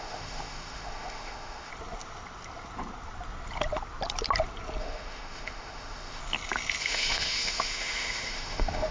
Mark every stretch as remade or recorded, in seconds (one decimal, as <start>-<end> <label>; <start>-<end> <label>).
0.0-1.7 remade; 1.7-4.8 recorded; 4.8-6.2 remade; 6.2-6.8 recorded; 6.8-8.9 remade